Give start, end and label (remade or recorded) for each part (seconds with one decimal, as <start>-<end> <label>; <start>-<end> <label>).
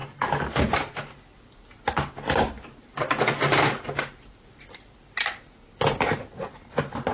0.0-7.1 recorded